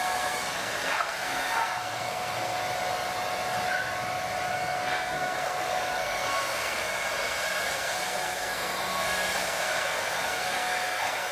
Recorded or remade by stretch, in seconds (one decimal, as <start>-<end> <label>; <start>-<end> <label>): 0.0-2.6 remade; 2.6-4.5 recorded; 4.5-11.3 remade